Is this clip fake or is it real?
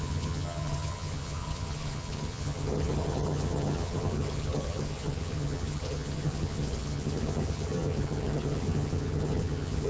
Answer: fake